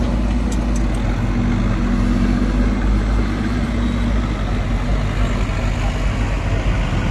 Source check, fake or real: real